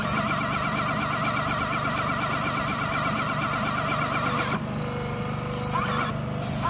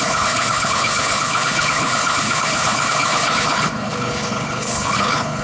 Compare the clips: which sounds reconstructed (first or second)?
second